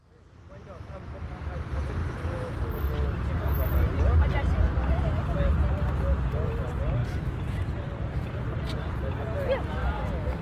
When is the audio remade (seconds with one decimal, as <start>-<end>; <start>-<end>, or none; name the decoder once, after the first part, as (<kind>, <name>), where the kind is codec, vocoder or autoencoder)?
7.0-10.4 (vocoder, BigVGAN v2)